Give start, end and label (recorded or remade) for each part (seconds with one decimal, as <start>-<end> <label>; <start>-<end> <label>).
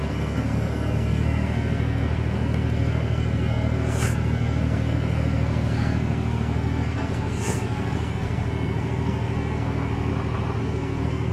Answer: 0.0-10.1 remade; 10.1-10.6 recorded; 10.6-11.3 remade